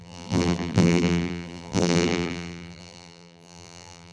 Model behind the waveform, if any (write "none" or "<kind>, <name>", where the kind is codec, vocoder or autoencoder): vocoder, BigVGAN v2